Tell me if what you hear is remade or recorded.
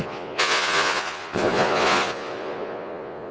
remade